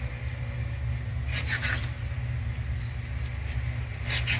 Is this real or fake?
real